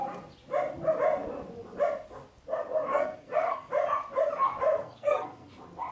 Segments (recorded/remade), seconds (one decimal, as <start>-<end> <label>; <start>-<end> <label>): 0.0-2.9 recorded; 2.9-3.7 remade; 3.7-4.8 recorded; 4.8-5.5 remade; 5.5-5.9 recorded